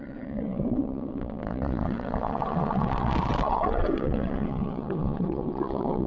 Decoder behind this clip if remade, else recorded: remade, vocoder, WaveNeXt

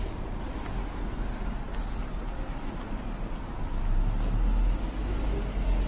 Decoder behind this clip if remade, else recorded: recorded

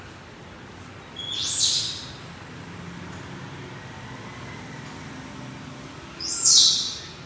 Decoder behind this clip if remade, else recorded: recorded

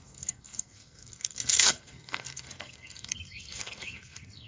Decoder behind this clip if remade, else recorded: remade, codec, SNAC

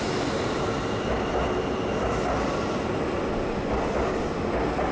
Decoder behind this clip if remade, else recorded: recorded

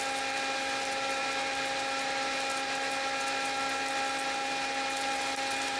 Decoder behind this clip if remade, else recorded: recorded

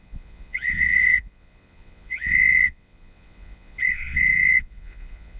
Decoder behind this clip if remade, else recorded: remade, vocoder, Vocos